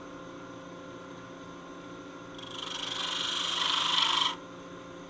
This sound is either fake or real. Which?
real